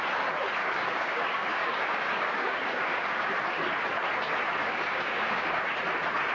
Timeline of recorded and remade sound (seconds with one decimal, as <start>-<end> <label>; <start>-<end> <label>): 0.0-0.6 recorded; 0.6-3.3 remade; 3.3-4.6 recorded; 4.6-5.6 remade; 5.6-6.3 recorded